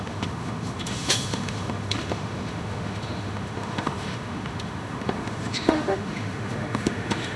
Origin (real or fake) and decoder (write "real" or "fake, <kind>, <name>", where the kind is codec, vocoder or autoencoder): fake, autoencoder, DAC-VAE